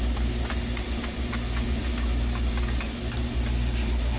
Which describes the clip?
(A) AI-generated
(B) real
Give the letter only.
B